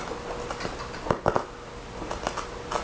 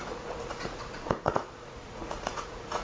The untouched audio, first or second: first